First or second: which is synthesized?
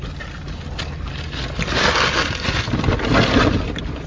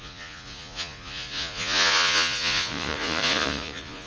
second